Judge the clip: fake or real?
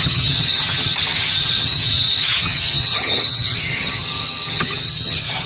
fake